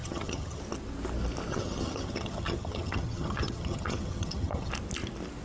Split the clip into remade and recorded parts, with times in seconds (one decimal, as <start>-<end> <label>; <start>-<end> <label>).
0.0-0.6 remade; 0.6-1.5 recorded; 1.5-4.7 remade; 4.7-5.4 recorded